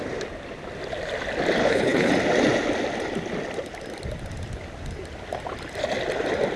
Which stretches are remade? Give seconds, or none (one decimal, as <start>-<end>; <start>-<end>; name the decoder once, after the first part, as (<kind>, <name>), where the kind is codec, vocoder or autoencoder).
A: 1.6-2.1 (codec, HILCodec)